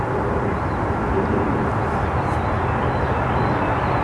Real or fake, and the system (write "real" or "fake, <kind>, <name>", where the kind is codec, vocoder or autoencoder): real